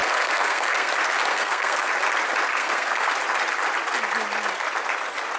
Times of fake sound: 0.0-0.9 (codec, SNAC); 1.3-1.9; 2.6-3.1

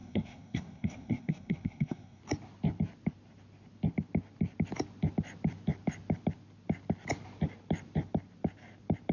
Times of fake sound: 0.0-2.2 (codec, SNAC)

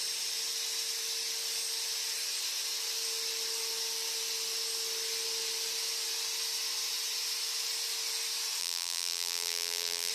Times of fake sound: 8.6-10.1 (vocoder, BigVGAN v2)